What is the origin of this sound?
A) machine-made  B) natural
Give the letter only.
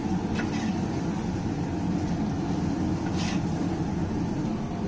B